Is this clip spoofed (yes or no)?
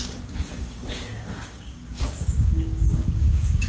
yes